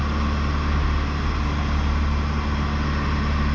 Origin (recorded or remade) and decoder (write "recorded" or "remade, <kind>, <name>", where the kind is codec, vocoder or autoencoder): recorded